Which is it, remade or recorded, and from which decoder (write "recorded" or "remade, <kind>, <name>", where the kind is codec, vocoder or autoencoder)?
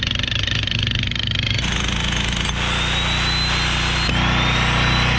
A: recorded